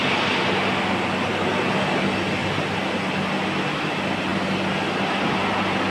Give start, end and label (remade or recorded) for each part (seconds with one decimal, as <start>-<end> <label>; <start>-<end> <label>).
0.0-5.9 recorded